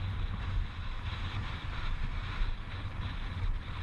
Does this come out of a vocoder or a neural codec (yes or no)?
no